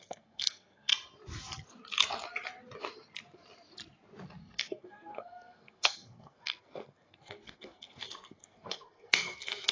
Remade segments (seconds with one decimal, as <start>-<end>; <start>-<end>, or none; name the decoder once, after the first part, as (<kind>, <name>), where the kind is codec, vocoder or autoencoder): 0.0-0.9 (codec, SNAC); 4.4-9.7